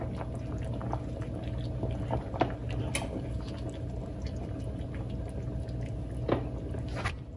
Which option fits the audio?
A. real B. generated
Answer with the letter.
A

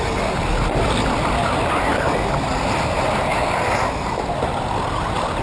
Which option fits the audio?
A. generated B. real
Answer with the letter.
B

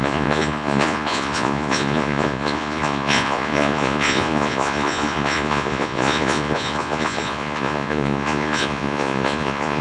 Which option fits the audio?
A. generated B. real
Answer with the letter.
A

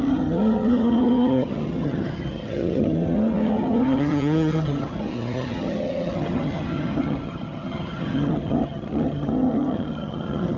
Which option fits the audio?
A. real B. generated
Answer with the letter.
B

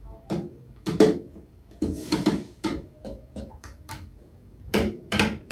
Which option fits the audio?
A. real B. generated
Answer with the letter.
B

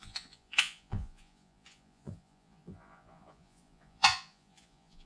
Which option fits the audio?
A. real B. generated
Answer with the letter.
B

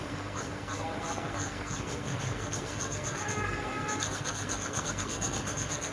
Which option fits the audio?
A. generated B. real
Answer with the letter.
A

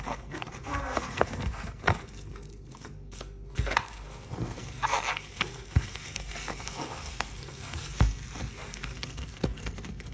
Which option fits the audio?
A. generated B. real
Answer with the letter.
A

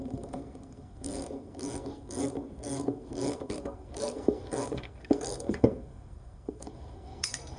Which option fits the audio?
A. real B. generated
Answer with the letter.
B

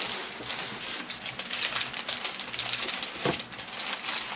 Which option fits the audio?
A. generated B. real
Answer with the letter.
B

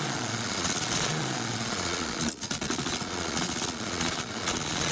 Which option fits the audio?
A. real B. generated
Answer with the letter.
B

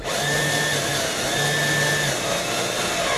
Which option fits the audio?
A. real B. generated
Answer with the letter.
A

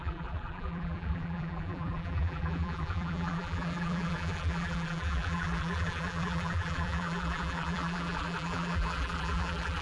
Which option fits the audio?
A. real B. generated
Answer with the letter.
B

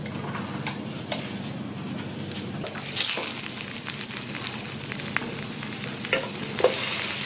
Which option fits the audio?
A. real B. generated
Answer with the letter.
A